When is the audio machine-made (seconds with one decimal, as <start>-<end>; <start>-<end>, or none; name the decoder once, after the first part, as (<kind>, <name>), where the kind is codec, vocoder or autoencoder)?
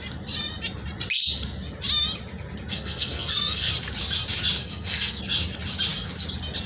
2.7-3.7 (codec, SNAC); 4.6-5.2